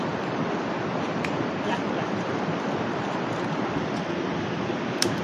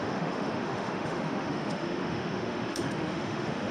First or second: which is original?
first